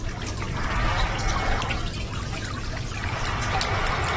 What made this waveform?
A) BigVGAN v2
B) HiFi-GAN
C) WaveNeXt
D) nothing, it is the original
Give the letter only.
D